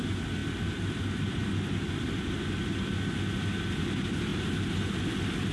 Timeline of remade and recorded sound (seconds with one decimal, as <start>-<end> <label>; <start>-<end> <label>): 0.0-5.5 recorded